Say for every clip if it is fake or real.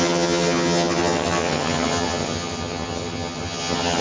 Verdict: fake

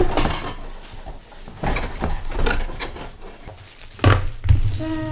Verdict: real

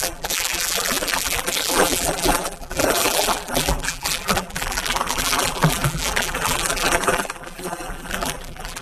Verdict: fake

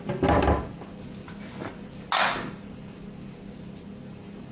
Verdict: real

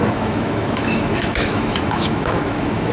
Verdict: fake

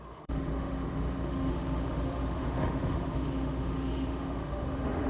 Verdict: fake